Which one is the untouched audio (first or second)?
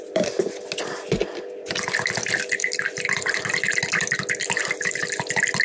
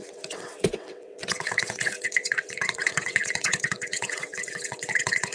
first